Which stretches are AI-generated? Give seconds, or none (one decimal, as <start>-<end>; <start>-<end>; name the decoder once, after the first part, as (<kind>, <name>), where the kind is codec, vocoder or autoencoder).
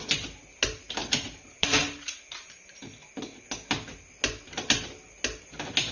1.0-2.9 (vocoder, BigVGAN v2)